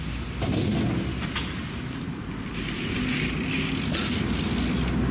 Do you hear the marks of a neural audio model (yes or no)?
no